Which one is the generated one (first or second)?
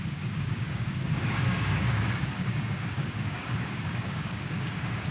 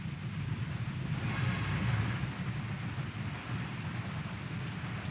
first